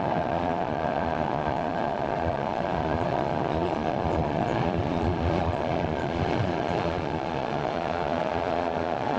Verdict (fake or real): fake